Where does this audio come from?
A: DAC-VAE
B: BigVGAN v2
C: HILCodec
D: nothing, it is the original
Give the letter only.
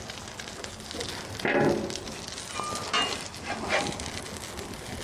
D